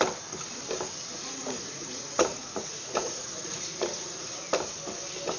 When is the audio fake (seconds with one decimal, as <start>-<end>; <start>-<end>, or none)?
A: 1.1-4.3